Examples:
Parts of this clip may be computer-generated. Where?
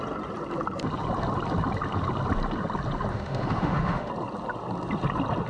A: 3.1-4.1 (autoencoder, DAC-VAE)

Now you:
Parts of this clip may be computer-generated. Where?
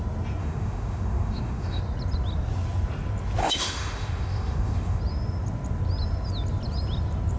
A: 0.4-1.8 (autoencoder, DAC-VAE); 3.4-5.0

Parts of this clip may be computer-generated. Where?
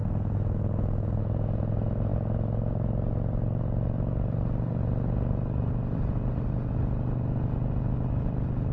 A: none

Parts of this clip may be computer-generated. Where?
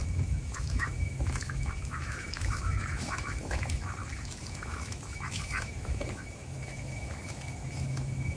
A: 0.0-8.4 (autoencoder, DAC-VAE)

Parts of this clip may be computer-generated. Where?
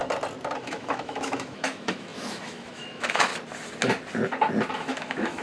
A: 0.6-3.3 (autoencoder, DAC-VAE); 4.8-5.4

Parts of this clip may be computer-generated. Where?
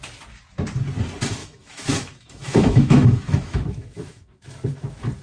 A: 1.4-4.5 (autoencoder, DAC-VAE)